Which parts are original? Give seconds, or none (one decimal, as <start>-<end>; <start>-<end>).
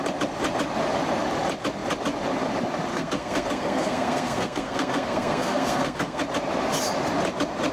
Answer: 0.0-2.9; 6.2-7.7